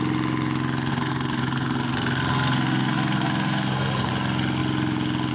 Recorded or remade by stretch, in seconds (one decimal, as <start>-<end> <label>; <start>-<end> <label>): 0.0-0.9 recorded; 0.9-4.1 remade; 4.1-5.3 recorded